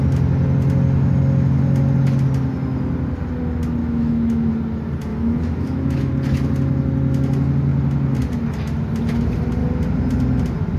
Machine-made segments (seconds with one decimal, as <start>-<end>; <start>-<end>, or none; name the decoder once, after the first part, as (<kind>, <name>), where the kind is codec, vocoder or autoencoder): 3.8-4.5 (autoencoder, DAC-VAE); 5.1-6.1